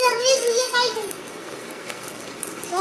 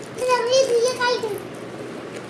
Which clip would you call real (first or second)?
second